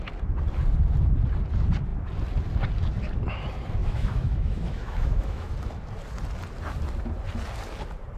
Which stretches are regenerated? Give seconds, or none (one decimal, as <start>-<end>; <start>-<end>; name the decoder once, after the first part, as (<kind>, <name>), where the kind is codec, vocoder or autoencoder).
3.8-5.5 (autoencoder, DAC-VAE)